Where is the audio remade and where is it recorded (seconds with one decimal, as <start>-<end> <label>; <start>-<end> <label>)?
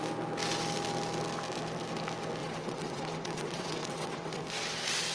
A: 0.0-2.4 recorded; 2.4-4.4 remade; 4.4-5.1 recorded